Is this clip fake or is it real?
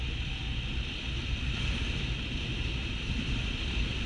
real